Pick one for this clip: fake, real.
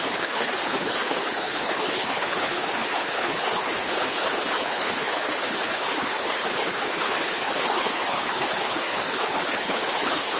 fake